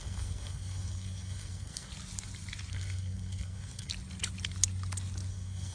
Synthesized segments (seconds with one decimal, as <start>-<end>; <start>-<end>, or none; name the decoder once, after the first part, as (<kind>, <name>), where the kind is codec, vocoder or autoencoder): 0.0-1.9 (codec, SNAC); 2.7-3.9; 5.3-5.7